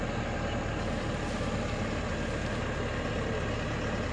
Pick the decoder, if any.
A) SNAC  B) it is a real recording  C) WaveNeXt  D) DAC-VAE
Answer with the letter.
B